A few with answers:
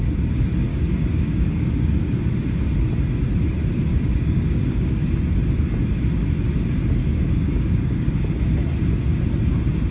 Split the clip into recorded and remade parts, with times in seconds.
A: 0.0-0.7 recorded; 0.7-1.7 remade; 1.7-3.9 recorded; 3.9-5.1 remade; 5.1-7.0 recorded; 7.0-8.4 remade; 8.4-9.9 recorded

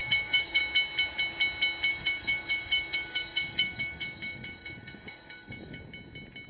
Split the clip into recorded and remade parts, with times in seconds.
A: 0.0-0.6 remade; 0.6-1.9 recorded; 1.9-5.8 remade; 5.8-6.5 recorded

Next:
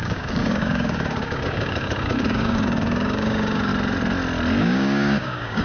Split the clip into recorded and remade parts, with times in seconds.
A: 0.0-3.7 remade; 3.7-4.6 recorded; 4.6-5.6 remade

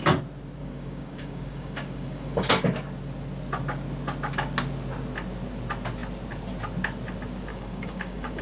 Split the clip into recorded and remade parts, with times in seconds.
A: 0.0-0.6 recorded; 0.6-2.5 remade; 2.5-7.5 recorded; 7.5-8.4 remade

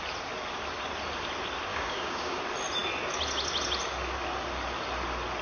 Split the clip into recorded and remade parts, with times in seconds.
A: 0.0-1.7 recorded; 1.7-2.4 remade; 2.4-5.4 recorded

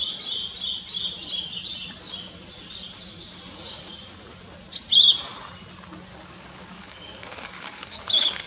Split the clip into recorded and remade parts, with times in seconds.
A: 0.0-6.1 recorded; 6.1-8.5 remade

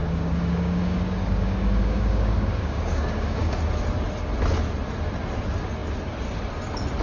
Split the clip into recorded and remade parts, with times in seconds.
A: 0.0-3.6 remade; 3.6-7.0 recorded

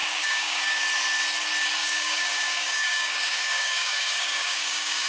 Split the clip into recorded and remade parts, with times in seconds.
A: 0.0-0.8 remade; 0.8-1.8 recorded; 1.8-5.1 remade